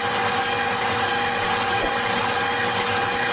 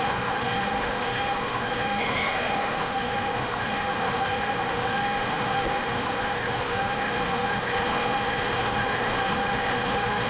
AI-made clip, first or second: second